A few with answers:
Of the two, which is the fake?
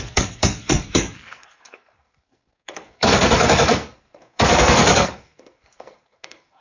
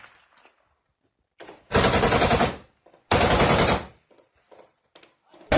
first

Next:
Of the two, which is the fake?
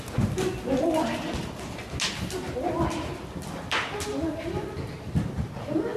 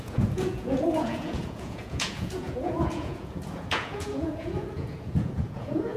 second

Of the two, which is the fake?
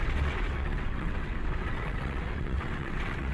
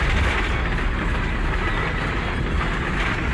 first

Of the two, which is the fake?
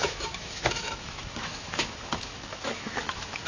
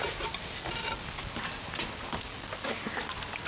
first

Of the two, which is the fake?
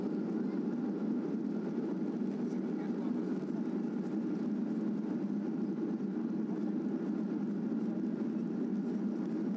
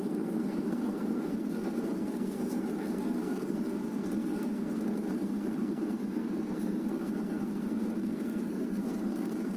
second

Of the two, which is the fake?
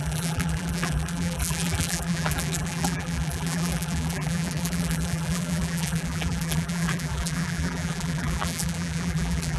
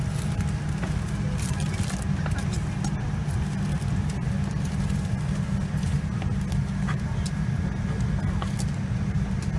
first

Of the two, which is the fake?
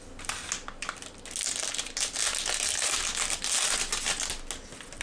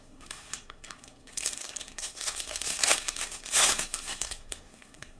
second